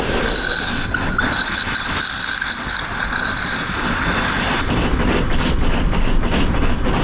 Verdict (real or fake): real